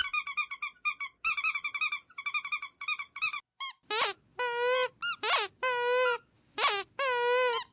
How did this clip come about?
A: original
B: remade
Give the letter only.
A